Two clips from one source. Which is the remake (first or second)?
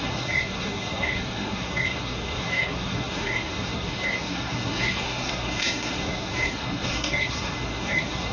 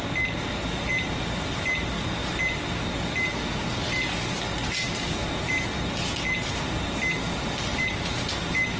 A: first